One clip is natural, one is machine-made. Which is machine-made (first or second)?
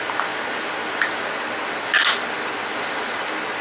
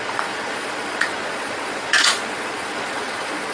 second